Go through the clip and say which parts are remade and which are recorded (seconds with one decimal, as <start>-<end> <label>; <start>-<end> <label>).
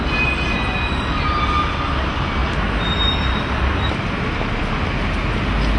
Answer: 0.0-5.8 recorded